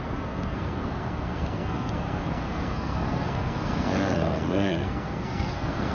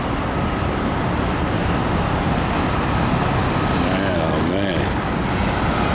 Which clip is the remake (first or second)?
first